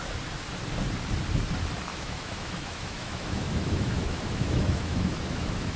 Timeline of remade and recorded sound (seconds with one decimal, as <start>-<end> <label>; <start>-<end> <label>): 0.0-1.9 recorded; 1.9-5.8 remade